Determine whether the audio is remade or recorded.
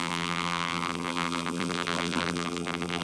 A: remade